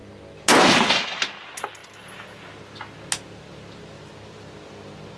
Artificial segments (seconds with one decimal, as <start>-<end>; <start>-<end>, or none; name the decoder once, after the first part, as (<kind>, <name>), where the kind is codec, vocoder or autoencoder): none